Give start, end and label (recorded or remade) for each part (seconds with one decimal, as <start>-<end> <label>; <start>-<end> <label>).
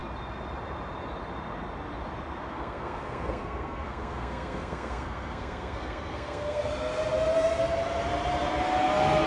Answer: 0.0-2.5 recorded; 2.5-6.7 remade; 6.7-9.3 recorded